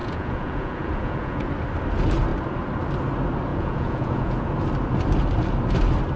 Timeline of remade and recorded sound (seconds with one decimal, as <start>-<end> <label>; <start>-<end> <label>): 0.0-1.5 remade; 1.5-3.5 recorded; 3.5-4.5 remade; 4.5-6.2 recorded